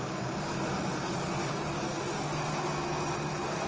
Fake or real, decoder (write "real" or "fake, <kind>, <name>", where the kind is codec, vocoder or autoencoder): real